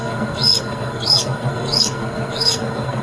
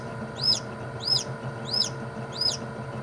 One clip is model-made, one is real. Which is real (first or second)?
second